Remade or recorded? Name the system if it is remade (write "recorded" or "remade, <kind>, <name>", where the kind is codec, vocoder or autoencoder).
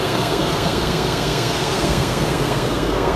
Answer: remade, codec, SNAC